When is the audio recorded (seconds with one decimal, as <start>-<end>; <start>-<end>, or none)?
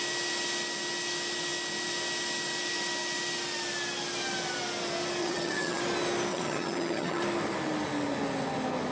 0.0-5.2; 5.8-6.3; 7.2-8.9